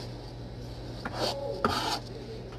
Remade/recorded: recorded